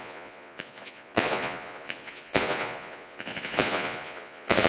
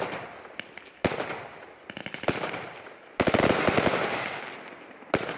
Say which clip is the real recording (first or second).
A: second